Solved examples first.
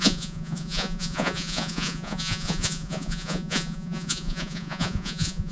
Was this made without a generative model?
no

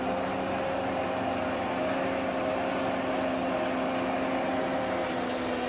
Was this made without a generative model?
yes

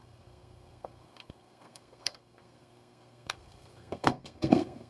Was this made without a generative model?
no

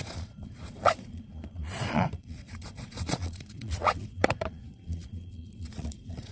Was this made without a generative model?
no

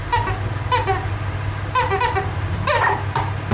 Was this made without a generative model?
yes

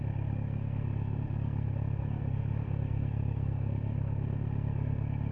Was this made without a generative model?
no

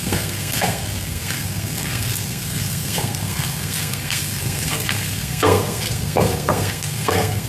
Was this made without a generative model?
no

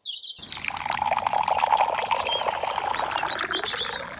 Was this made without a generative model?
yes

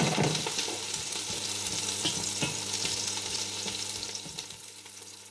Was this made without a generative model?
no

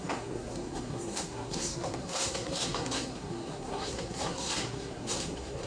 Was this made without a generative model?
no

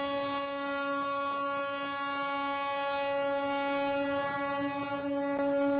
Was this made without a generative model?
yes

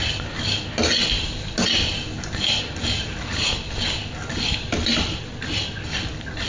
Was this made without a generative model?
yes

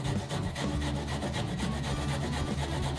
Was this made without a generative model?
yes